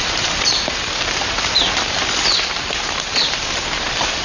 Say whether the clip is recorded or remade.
recorded